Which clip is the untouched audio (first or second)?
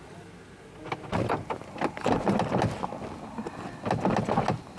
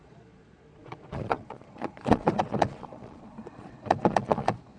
first